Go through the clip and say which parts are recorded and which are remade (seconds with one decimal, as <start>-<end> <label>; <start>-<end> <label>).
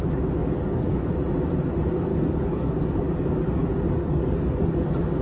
0.0-0.4 recorded; 0.4-1.1 remade; 1.1-2.1 recorded; 2.1-3.6 remade; 3.6-4.0 recorded; 4.0-4.7 remade; 4.7-5.2 recorded